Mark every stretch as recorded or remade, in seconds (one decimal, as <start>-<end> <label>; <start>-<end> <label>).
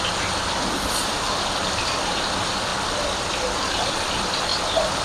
0.0-2.7 remade; 2.7-3.5 recorded; 3.5-4.5 remade; 4.5-5.0 recorded